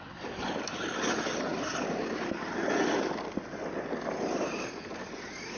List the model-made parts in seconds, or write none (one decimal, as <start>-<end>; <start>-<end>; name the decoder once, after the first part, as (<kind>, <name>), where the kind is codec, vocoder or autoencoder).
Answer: none

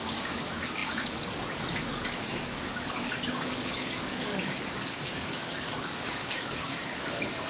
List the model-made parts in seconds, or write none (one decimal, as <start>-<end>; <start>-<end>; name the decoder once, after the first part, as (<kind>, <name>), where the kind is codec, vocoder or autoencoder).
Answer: 0.0-7.5 (codec, DAC)

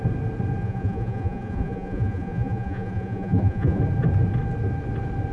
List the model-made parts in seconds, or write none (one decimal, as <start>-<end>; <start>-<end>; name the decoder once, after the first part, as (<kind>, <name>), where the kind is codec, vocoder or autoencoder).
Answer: 0.6-3.8 (vocoder, Vocos)